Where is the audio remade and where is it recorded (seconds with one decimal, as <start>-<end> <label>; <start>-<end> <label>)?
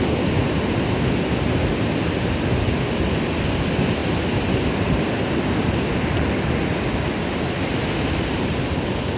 0.0-9.2 recorded